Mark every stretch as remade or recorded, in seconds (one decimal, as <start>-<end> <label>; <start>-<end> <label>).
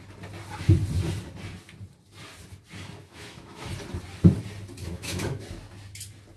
0.0-3.0 recorded; 3.0-3.7 remade; 3.7-4.8 recorded; 4.8-5.4 remade; 5.4-6.4 recorded